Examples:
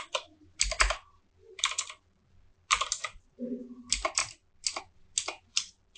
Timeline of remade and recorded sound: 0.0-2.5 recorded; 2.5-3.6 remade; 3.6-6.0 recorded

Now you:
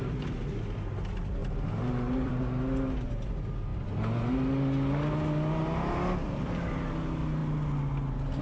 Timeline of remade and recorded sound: 0.0-1.4 recorded; 1.4-2.3 remade; 2.3-3.7 recorded; 3.7-4.3 remade; 4.3-6.2 recorded; 6.2-6.7 remade; 6.7-8.4 recorded

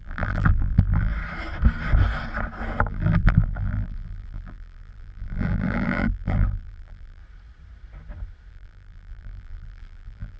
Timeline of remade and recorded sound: 0.0-1.1 remade; 1.1-2.8 recorded; 2.8-7.2 remade; 7.2-8.5 recorded; 8.5-10.4 remade

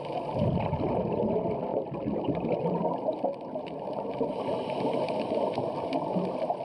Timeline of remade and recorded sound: 0.0-1.7 recorded; 1.7-5.7 remade; 5.7-6.6 recorded

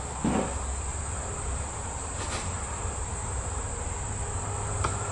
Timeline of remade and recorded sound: 0.0-0.9 recorded; 0.9-3.6 remade; 3.6-5.1 recorded

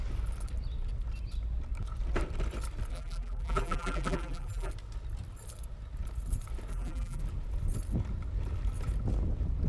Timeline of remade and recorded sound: 0.0-2.9 recorded; 2.9-4.7 remade; 4.7-6.7 recorded; 6.7-7.2 remade; 7.2-9.7 recorded

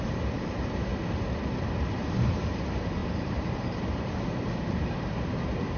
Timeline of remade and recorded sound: 0.0-0.9 remade; 0.9-2.3 recorded; 2.3-5.8 remade

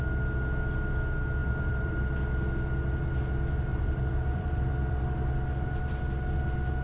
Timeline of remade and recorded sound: 0.0-1.4 recorded; 1.4-2.0 remade; 2.0-3.7 recorded; 3.7-4.7 remade; 4.7-6.8 recorded